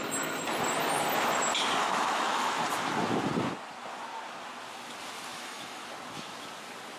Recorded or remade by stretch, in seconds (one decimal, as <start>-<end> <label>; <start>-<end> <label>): 0.0-1.8 recorded; 1.8-2.6 remade; 2.6-5.3 recorded; 5.3-5.9 remade; 5.9-7.0 recorded